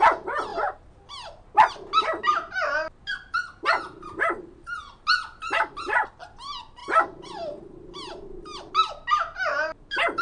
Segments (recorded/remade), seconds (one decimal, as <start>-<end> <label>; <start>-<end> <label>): 0.0-10.2 recorded